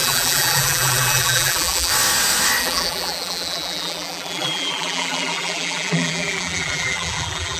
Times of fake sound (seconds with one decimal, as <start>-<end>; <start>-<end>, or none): 0.0-1.9; 2.6-7.6